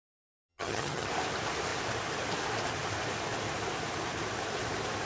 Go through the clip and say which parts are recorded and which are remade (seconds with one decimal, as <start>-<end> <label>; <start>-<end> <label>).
0.0-0.5 recorded; 0.5-1.1 remade; 1.1-5.1 recorded